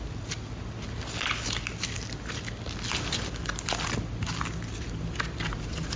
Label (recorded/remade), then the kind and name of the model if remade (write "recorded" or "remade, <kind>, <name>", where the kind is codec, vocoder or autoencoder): recorded